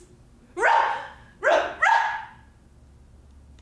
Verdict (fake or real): real